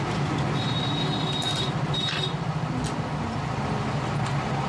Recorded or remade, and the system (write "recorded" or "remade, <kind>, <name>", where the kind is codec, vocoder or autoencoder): recorded